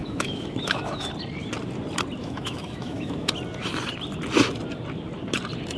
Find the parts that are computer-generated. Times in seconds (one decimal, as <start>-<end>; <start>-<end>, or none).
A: 0.0-1.1; 2.2-3.3